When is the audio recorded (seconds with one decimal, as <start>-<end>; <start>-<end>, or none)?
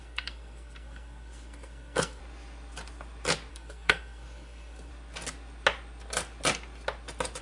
2.2-3.5; 4.9-7.4